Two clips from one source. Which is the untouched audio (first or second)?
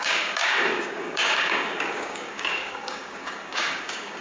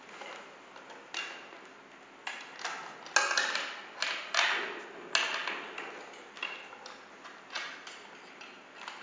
second